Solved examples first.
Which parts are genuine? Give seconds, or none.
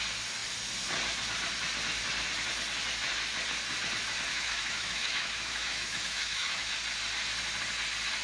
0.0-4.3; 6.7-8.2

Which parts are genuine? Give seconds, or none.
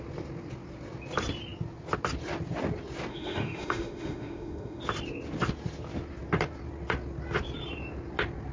0.0-3.1; 4.8-8.5